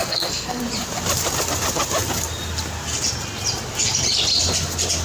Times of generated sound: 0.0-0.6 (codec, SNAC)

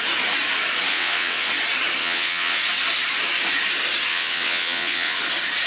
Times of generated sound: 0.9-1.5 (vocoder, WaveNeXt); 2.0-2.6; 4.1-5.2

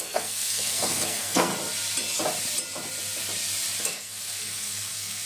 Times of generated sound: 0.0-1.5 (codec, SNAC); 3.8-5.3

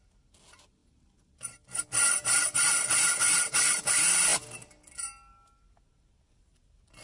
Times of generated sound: none